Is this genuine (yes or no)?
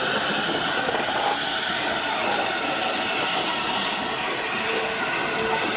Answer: yes